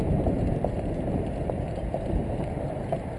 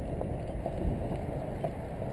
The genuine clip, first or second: second